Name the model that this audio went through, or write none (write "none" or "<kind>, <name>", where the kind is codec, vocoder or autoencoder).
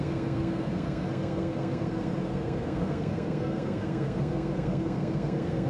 codec, SNAC